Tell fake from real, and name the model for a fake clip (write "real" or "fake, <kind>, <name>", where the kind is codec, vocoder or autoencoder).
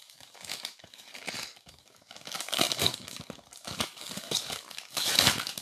fake, codec, DAC